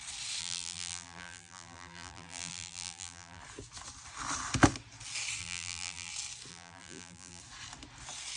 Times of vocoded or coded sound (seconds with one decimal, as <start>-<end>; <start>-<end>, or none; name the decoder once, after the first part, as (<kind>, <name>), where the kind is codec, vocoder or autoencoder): 0.4-3.4 (vocoder, BigVGAN v2); 5.4-6.1; 6.5-7.4

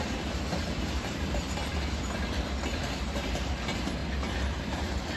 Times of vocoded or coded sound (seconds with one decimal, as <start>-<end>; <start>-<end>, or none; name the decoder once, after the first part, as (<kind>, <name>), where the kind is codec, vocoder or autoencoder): 0.0-1.7 (vocoder, BigVGAN v2); 2.8-4.0; 4.6-5.2

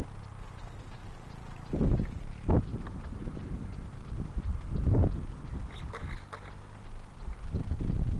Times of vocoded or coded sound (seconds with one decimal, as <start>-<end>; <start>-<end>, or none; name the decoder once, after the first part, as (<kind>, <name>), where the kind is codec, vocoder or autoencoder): 1.0-1.7 (vocoder, BigVGAN v2); 2.7-4.7